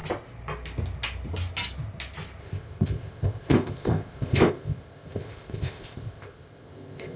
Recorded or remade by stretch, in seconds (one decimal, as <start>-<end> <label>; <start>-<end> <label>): 0.0-2.4 recorded; 2.4-7.2 remade